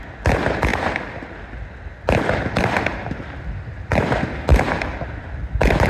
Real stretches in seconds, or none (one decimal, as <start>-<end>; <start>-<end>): 0.0-5.9